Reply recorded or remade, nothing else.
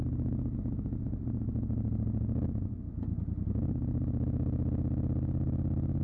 recorded